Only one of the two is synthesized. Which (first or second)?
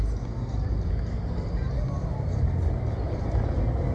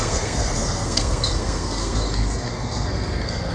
second